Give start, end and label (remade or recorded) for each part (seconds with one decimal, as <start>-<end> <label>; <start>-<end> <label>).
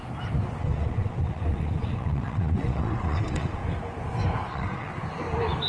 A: 0.0-0.6 recorded; 0.6-3.6 remade; 3.6-4.5 recorded; 4.5-4.9 remade; 4.9-5.7 recorded